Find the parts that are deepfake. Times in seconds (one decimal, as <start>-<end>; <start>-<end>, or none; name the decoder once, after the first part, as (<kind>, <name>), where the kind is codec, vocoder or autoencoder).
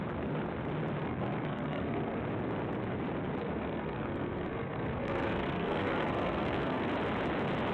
1.0-2.2 (codec, SNAC); 3.4-6.9